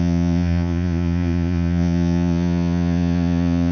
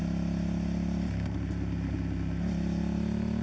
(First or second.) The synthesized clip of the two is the first